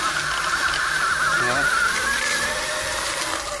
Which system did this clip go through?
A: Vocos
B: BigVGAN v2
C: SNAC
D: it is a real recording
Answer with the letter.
D